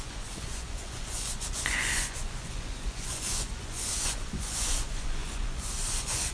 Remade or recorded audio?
remade